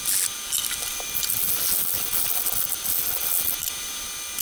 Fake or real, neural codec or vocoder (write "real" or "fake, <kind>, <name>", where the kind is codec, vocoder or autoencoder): real